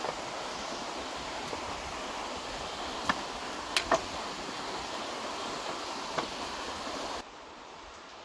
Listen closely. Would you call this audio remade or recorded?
recorded